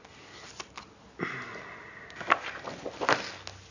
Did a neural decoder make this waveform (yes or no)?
no